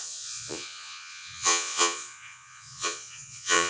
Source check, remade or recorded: remade